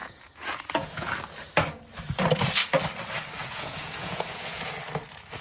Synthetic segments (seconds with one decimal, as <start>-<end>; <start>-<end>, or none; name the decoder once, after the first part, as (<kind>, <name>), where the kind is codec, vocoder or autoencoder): 0.0-1.1 (vocoder, Vocos); 3.4-4.7